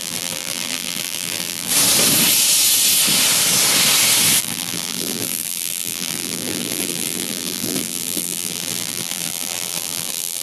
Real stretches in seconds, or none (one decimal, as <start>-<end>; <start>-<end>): 1.7-4.4